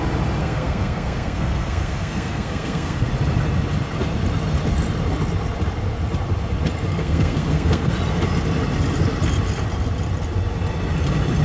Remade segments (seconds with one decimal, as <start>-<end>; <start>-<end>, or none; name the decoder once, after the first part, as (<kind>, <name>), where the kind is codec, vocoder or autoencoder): 0.4-3.1 (codec, SNAC); 6.9-7.9